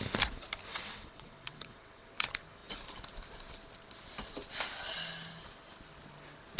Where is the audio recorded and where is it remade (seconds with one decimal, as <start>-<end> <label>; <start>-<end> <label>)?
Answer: 0.0-0.7 recorded; 0.7-2.1 remade; 2.1-6.6 recorded